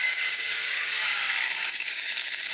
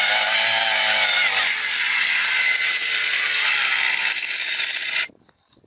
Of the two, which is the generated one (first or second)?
first